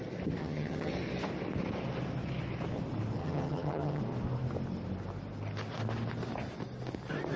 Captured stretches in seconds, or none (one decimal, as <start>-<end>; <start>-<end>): 0.0-0.4; 0.9-3.2; 4.0-7.4

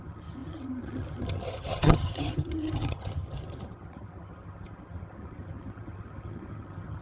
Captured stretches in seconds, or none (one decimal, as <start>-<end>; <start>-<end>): none

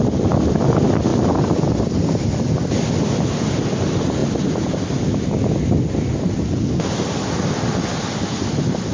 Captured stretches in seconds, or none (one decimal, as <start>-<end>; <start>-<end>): 0.0-8.9

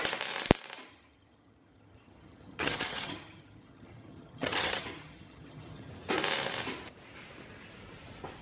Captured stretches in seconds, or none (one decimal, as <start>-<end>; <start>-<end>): 0.0-0.9; 5.9-8.4

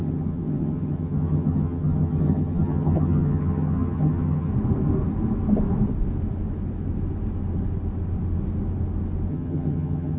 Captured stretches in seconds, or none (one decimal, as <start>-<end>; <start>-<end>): 4.5-9.3